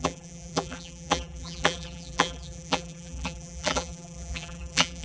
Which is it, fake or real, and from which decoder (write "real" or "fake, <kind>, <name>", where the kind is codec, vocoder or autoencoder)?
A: fake, vocoder, BigVGAN v2